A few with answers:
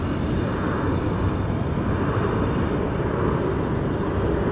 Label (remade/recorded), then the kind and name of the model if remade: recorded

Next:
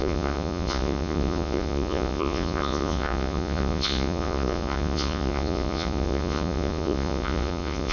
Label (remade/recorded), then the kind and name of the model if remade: remade, vocoder, Vocos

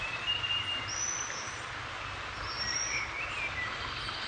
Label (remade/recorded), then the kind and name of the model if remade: recorded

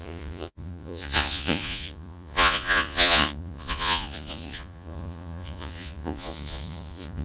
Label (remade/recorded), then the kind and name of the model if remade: remade, vocoder, Vocos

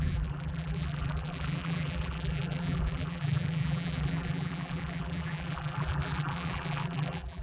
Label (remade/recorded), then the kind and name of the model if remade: remade, vocoder, BigVGAN v2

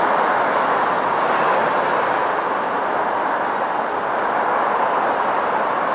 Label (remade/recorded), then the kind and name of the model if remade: recorded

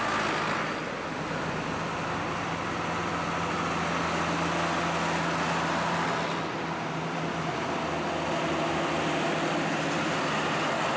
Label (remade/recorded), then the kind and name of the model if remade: recorded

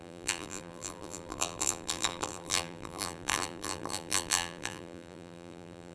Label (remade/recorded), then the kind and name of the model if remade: remade, vocoder, BigVGAN v2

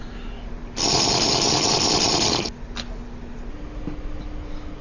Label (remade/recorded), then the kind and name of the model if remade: recorded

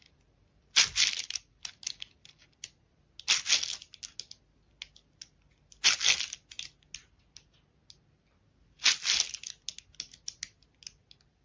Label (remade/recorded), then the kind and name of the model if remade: recorded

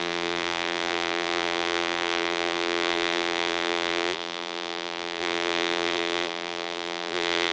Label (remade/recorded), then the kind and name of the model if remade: remade, vocoder, BigVGAN v2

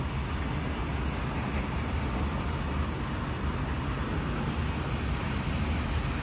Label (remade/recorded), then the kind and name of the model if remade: recorded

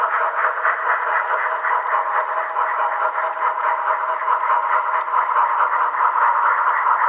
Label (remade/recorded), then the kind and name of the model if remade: recorded